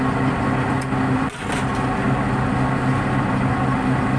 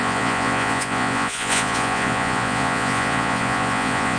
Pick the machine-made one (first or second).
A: second